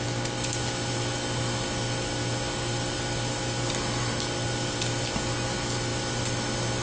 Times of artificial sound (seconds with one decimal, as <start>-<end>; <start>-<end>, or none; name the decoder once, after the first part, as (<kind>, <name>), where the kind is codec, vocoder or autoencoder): none